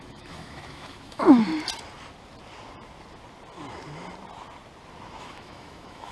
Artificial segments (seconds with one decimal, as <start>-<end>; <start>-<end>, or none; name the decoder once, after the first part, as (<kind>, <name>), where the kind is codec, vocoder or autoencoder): 0.0-1.5 (autoencoder, DAC-VAE); 5.2-6.1